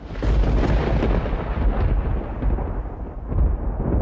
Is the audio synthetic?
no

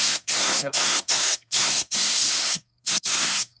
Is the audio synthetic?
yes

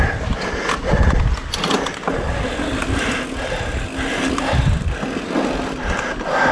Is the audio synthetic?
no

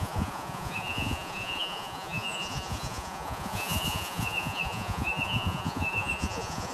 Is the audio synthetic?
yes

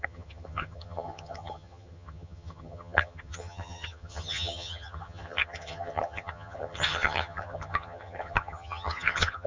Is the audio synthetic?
yes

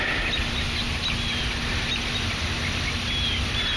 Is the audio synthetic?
no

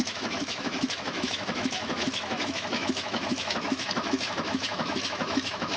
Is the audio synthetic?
yes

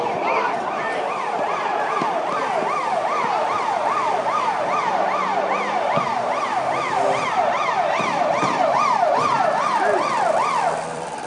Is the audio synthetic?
yes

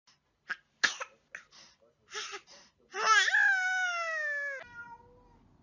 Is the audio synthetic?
no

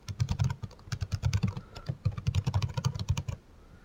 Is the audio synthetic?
no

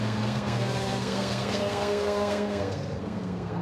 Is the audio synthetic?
yes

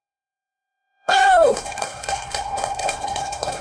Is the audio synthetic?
yes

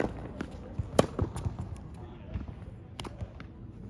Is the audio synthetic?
no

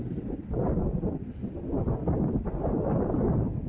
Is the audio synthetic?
no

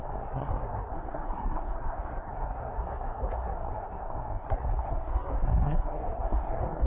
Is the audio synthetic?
yes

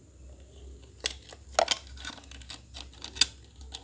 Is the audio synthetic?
no